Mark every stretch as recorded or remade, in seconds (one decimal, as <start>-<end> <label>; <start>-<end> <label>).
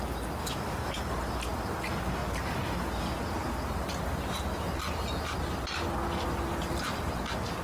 0.0-0.4 recorded; 0.4-0.9 remade; 0.9-7.6 recorded